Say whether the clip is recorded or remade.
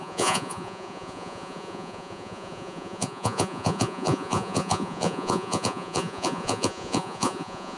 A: remade